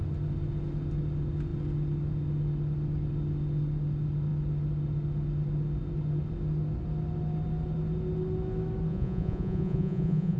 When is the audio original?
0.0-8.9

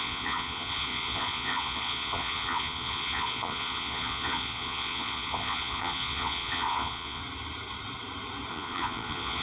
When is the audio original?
7.2-8.5

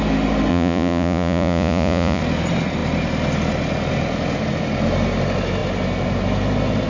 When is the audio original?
0.0-0.5; 2.2-6.9

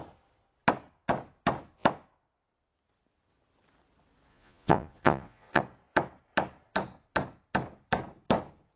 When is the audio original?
0.0-4.3; 5.6-8.8

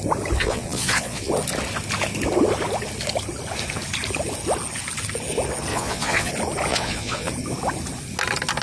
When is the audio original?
0.0-0.4; 1.3-5.7; 6.3-6.7; 7.3-8.6

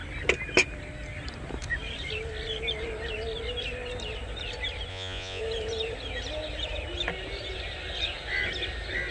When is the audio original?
0.0-4.9; 5.4-9.1